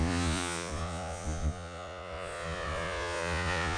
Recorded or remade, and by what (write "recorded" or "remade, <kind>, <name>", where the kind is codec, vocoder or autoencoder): remade, vocoder, Vocos